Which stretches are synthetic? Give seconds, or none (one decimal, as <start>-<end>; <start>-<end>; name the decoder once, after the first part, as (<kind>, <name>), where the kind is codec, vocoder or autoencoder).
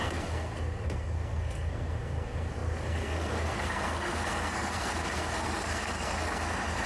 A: 0.0-6.9 (codec, SNAC)